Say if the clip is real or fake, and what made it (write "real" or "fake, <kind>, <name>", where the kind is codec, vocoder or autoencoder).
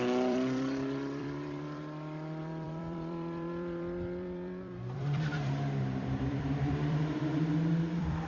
fake, vocoder, BigVGAN v2